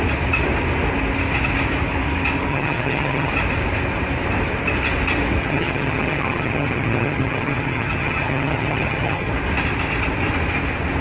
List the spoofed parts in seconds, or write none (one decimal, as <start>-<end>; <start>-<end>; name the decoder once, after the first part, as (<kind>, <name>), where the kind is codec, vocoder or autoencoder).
2.5-3.3 (vocoder, HiFi-GAN); 5.4-9.3